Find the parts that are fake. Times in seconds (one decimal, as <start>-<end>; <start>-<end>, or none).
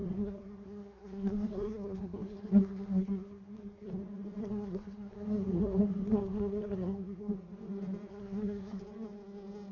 0.0-3.9; 4.4-7.3; 8.1-8.8